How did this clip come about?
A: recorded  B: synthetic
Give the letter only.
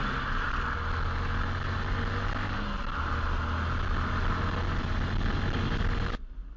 A